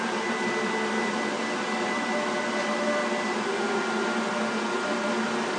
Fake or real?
real